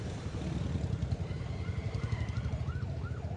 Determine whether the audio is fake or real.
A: real